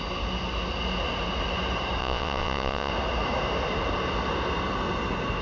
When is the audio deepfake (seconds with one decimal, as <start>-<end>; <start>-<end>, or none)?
2.0-2.9